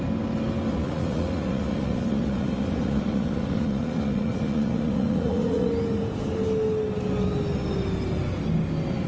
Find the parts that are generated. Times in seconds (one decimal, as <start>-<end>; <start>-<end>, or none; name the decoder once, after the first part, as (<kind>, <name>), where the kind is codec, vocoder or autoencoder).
0.7-5.7 (vocoder, Vocos)